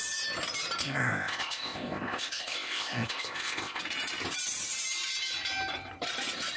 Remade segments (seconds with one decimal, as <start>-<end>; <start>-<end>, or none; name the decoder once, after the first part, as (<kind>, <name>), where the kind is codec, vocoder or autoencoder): 0.8-3.8 (codec, ZipCodec)